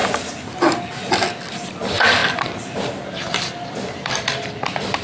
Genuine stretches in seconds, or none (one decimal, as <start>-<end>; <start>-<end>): 0.0-1.1